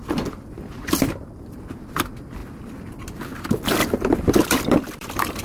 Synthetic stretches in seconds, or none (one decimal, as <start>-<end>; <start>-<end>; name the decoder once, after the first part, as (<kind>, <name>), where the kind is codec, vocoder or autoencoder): 0.0-2.4 (vocoder, BigVGAN v2); 3.0-5.4